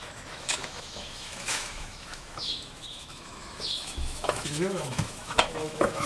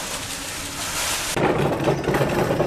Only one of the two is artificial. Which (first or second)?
first